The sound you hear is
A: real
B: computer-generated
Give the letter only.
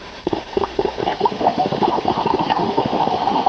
B